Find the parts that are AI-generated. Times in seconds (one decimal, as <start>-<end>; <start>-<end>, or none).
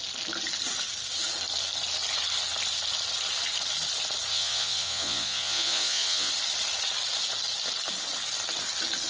4.3-6.3